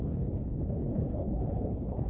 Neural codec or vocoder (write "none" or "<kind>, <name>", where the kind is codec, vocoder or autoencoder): codec, HILCodec